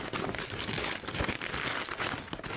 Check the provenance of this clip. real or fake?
real